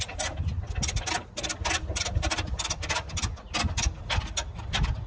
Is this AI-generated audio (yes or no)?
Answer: no